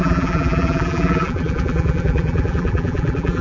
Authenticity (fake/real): fake